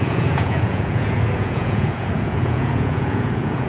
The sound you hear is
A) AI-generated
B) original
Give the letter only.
A